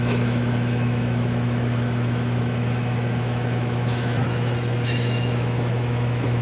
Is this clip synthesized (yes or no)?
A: yes